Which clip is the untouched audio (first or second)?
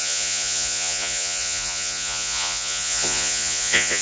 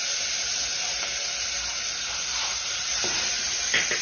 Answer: second